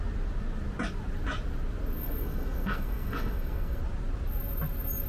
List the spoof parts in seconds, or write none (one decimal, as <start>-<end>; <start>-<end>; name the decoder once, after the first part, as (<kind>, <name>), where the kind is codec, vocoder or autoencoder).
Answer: 2.0-3.8 (codec, SNAC)